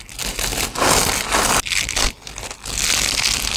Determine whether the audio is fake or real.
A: real